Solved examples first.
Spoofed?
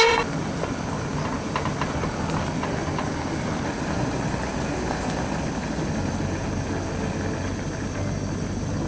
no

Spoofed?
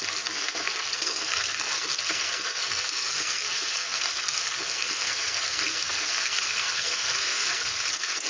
yes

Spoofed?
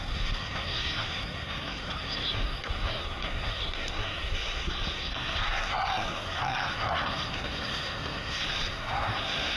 yes